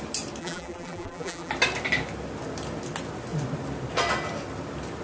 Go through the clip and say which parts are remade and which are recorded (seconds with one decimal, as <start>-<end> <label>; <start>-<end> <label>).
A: 0.0-0.4 recorded; 0.4-1.5 remade; 1.5-5.0 recorded